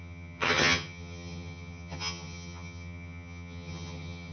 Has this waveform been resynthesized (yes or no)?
yes